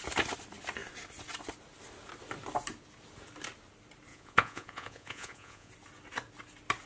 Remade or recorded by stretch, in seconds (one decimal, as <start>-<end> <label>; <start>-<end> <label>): 0.0-4.1 recorded; 4.1-5.7 remade; 5.7-6.9 recorded